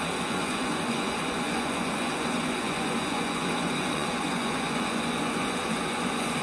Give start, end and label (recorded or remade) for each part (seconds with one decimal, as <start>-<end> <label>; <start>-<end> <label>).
0.0-6.4 remade